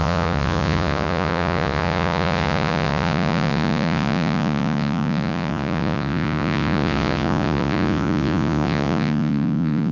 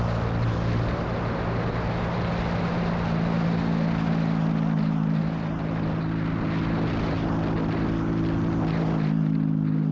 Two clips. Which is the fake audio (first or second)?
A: first